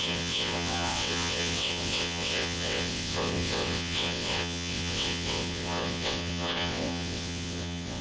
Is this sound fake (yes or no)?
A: yes